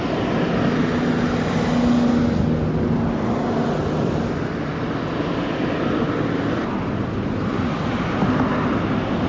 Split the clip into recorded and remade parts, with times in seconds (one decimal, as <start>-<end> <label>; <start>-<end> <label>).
0.0-9.3 recorded